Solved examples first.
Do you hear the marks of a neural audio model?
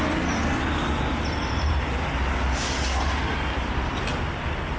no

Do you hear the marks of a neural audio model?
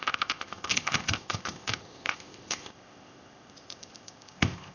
yes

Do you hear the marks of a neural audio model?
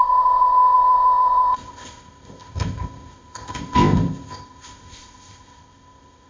yes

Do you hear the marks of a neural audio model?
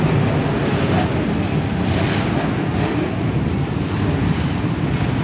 no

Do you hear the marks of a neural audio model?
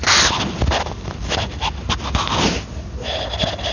no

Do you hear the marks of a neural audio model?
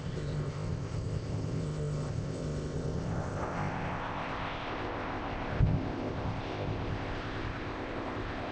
yes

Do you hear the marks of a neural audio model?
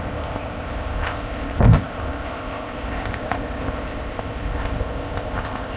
yes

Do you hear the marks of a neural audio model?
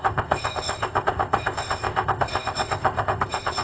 yes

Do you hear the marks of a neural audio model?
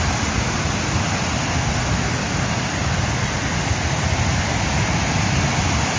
no